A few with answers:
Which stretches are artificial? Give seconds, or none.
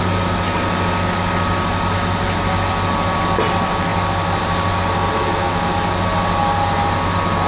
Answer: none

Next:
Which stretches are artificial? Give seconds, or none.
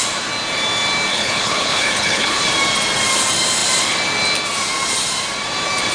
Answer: 1.1-2.4 (codec, HILCodec)